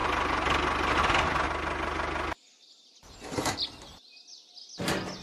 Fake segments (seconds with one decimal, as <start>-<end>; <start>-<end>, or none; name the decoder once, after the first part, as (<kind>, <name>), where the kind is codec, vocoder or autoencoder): none